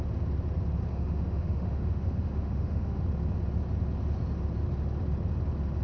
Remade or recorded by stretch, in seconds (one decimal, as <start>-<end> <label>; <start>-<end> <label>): 0.0-0.9 recorded; 0.9-3.0 remade; 3.0-5.8 recorded